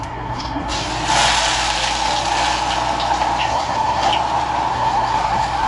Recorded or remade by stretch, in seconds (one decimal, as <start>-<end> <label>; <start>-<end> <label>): 0.0-0.9 remade; 0.9-3.4 recorded; 3.4-4.1 remade; 4.1-4.7 recorded; 4.7-5.7 remade